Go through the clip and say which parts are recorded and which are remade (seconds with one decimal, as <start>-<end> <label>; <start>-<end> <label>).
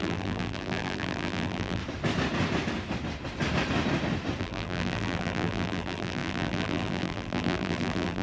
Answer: 0.0-1.8 remade; 1.8-4.4 recorded; 4.4-8.2 remade